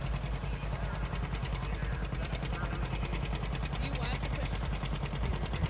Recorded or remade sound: recorded